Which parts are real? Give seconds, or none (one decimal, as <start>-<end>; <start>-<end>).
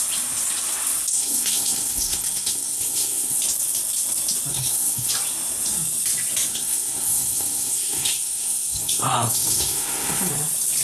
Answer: 0.0-1.1; 3.4-4.5; 5.1-6.5; 10.3-10.8